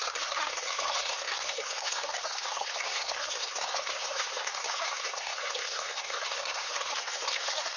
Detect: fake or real fake